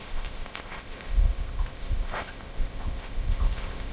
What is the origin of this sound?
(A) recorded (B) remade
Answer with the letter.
B